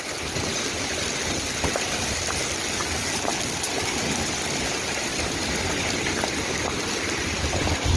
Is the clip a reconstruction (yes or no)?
no